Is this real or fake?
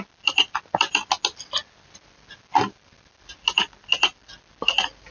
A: real